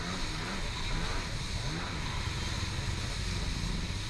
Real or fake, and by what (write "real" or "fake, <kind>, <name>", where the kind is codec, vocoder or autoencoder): real